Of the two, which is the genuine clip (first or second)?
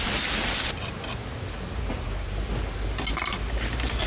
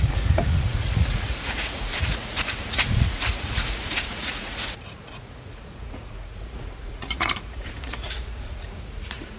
first